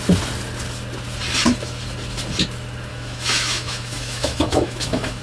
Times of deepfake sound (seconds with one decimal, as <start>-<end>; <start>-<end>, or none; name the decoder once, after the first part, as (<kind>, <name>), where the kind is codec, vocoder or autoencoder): 2.9-5.2 (autoencoder, DAC-VAE)